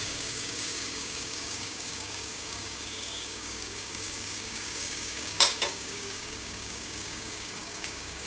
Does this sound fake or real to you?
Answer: fake